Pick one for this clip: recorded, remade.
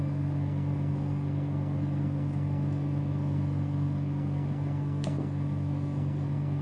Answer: remade